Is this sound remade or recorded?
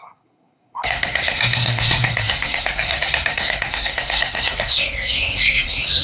remade